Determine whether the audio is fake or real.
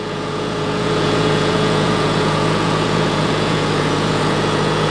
fake